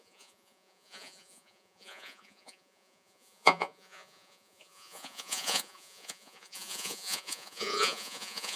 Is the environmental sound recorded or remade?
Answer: remade